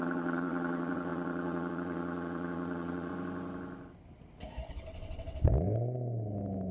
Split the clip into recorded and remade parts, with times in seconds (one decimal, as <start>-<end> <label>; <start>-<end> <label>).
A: 0.0-3.1 remade; 3.1-4.7 recorded; 4.7-5.5 remade; 5.5-6.7 recorded